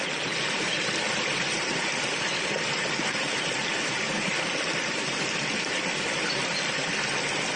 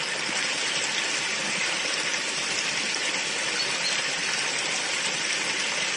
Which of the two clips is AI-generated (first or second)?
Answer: first